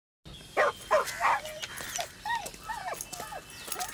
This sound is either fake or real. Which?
real